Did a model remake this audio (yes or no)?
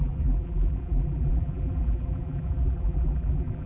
yes